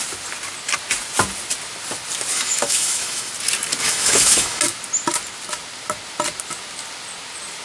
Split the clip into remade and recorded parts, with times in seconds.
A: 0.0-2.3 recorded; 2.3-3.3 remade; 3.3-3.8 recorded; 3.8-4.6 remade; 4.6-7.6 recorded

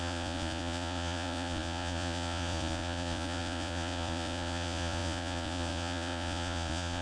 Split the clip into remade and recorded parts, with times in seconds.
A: 0.0-7.0 remade

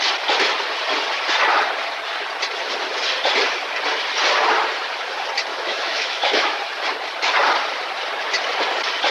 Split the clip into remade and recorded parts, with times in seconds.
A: 0.0-5.5 recorded; 5.5-6.6 remade; 6.6-9.1 recorded

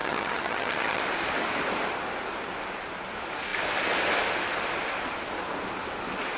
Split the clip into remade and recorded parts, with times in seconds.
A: 0.0-1.0 remade; 1.0-6.4 recorded

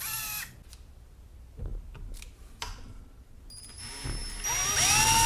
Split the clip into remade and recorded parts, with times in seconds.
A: 0.0-2.7 recorded; 2.7-3.4 remade; 3.4-5.3 recorded

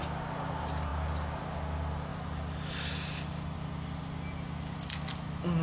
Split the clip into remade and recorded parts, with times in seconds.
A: 0.0-5.6 recorded